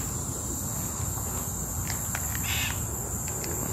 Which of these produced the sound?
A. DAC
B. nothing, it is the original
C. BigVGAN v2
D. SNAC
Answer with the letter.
B